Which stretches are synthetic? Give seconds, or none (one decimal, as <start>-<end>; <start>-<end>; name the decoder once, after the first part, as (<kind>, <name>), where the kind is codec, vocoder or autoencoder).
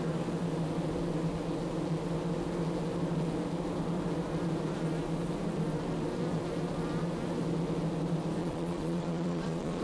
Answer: 8.4-9.8 (vocoder, Vocos)